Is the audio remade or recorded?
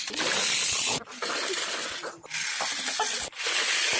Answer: recorded